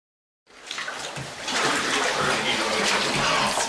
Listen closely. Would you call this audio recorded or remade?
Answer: recorded